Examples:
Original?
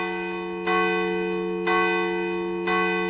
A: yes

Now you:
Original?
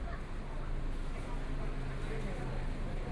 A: yes